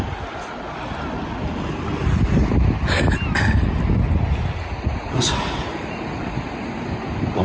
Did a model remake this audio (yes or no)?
no